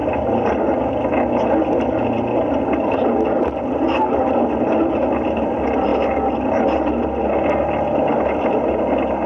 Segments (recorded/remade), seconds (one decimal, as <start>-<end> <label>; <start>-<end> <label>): 0.0-4.6 recorded; 4.6-5.9 remade; 5.9-9.3 recorded